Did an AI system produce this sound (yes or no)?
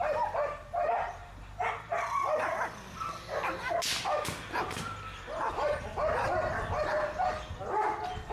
no